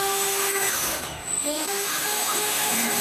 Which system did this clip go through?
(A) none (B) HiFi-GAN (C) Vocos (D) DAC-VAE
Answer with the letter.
D